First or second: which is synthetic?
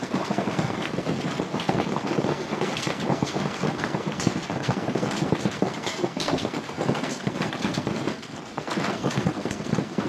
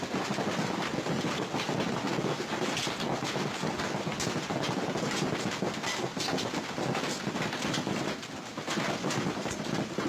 first